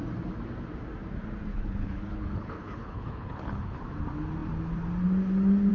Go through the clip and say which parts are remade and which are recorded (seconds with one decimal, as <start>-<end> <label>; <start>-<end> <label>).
0.0-1.5 recorded; 1.5-3.8 remade; 3.8-5.7 recorded